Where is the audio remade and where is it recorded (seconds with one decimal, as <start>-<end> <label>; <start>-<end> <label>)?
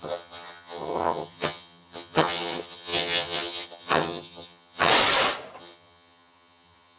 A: 0.0-4.9 remade; 4.9-5.6 recorded; 5.6-7.0 remade